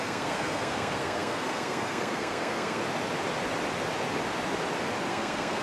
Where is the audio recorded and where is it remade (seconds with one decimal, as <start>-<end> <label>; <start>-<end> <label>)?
0.0-2.8 remade; 2.8-5.1 recorded; 5.1-5.6 remade